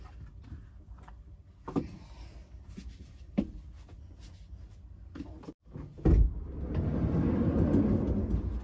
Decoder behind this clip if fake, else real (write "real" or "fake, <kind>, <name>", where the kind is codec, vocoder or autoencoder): real